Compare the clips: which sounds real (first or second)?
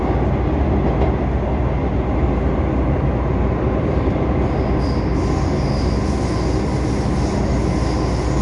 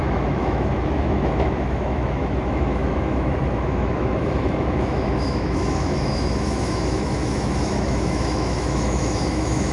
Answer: first